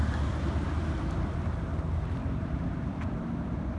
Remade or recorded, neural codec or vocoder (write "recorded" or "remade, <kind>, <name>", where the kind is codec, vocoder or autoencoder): remade, vocoder, BigVGAN v2